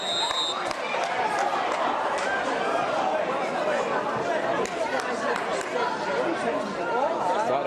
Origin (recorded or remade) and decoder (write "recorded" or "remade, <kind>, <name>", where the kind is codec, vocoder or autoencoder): recorded